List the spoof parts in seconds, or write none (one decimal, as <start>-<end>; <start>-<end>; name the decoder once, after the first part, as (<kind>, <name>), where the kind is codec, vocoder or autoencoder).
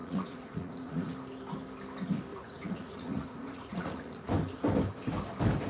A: 0.0-1.1 (vocoder, Vocos); 2.3-4.3